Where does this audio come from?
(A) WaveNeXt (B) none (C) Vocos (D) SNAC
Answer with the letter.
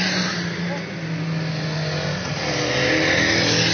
B